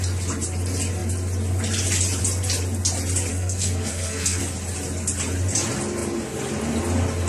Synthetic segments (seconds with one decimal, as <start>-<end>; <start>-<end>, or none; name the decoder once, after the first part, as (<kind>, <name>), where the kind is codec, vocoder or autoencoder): 3.3-4.4 (codec, SNAC)